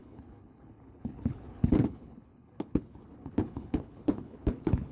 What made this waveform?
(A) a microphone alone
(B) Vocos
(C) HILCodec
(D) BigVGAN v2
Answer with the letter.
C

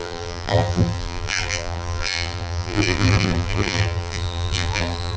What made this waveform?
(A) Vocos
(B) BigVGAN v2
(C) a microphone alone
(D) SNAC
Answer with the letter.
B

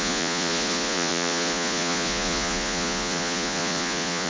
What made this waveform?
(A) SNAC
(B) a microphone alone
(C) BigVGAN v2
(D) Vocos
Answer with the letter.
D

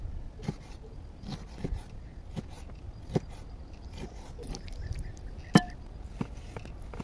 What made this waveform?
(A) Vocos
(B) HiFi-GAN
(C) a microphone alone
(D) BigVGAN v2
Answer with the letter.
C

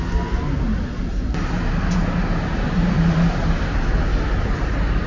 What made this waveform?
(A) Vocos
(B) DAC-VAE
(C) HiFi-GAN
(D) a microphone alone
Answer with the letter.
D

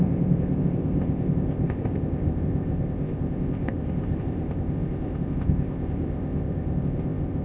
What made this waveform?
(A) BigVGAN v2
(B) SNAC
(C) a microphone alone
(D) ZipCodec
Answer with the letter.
D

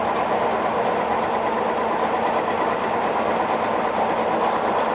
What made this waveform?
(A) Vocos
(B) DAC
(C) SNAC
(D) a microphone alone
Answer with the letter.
D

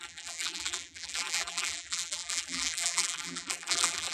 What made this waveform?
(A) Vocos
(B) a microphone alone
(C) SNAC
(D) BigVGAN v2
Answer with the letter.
D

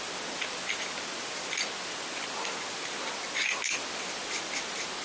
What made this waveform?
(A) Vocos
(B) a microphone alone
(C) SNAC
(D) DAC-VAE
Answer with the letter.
B